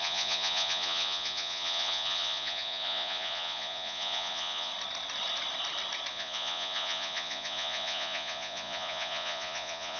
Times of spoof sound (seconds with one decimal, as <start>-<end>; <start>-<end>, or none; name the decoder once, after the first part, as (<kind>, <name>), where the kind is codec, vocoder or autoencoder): 0.0-4.7 (vocoder, Vocos); 6.1-10.0